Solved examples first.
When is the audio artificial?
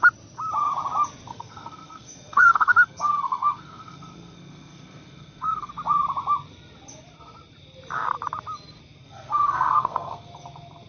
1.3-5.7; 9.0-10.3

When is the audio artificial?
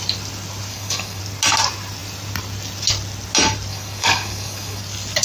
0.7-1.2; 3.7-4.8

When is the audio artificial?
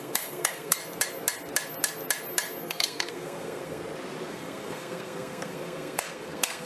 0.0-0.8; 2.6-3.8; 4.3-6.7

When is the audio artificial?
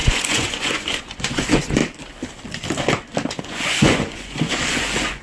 0.0-1.8; 3.3-5.2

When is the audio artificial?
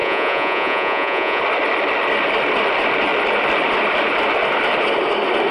0.0-1.4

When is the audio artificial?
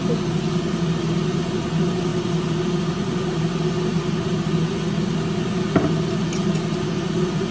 none